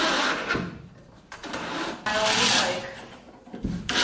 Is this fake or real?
real